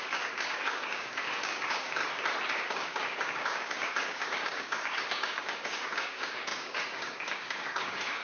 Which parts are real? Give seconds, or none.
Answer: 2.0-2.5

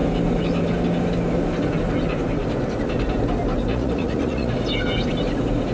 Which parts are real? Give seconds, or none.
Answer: 0.0-3.7; 4.5-5.7

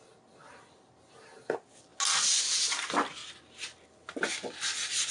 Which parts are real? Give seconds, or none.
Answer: 0.0-5.1

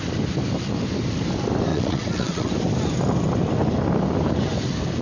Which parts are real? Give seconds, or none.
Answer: 0.0-1.7; 2.5-5.0

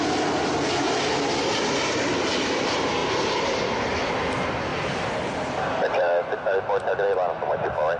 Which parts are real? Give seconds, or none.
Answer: 0.0-3.0; 4.1-8.0